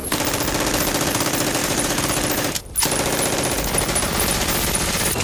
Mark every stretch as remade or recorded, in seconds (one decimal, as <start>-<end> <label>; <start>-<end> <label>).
0.0-1.6 recorded; 1.6-2.6 remade; 2.6-5.2 recorded